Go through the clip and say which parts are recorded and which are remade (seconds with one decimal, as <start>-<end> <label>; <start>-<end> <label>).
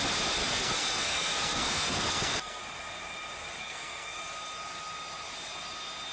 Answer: 0.0-0.4 recorded; 0.4-2.6 remade; 2.6-3.6 recorded; 3.6-4.2 remade; 4.2-6.1 recorded